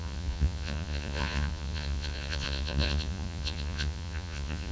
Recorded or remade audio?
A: remade